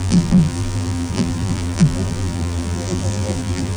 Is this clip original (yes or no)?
no